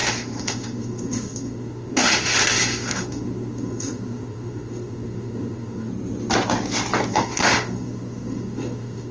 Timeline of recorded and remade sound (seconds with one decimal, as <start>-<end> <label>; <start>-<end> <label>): 0.0-5.9 remade; 5.9-7.1 recorded; 7.1-9.1 remade